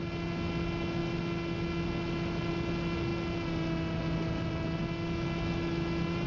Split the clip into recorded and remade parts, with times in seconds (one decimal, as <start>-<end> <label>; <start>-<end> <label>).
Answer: 0.0-6.3 recorded